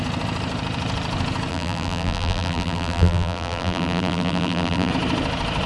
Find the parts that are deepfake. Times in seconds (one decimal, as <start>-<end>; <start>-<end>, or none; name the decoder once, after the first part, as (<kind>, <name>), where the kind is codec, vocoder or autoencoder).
1.5-4.9 (vocoder, BigVGAN v2)